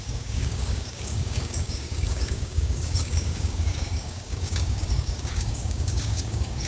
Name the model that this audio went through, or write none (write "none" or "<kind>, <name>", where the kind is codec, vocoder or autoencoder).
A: codec, DAC